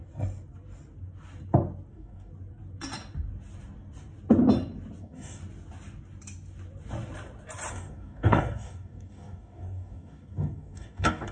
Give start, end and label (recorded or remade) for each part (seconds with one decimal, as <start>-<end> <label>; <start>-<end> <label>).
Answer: 0.0-1.9 recorded; 1.9-2.3 remade; 2.3-5.0 recorded; 5.0-5.4 remade; 5.4-7.7 recorded; 7.7-11.3 remade